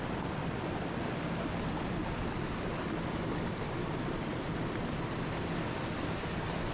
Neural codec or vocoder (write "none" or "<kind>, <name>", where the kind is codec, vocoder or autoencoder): none